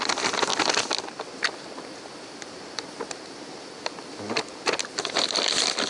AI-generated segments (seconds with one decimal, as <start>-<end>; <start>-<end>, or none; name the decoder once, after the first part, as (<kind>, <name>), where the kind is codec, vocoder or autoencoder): none